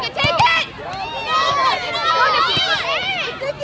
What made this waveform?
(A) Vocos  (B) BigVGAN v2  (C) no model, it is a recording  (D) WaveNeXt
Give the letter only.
C